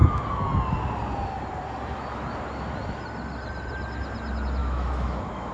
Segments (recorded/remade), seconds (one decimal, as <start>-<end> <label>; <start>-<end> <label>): 0.0-4.6 recorded; 4.6-5.5 remade